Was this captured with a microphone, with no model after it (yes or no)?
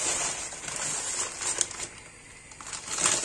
yes